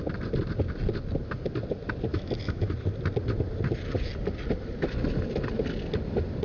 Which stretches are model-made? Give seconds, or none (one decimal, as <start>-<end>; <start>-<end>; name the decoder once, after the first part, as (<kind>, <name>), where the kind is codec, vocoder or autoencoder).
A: 2.1-2.7 (autoencoder, DAC-VAE)